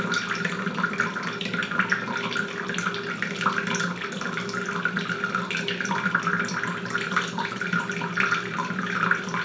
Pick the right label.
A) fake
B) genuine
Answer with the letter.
B